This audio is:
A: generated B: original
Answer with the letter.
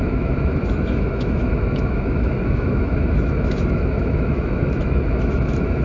A